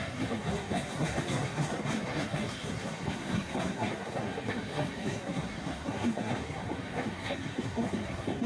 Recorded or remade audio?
remade